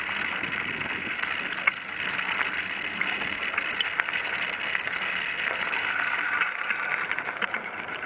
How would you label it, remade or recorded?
recorded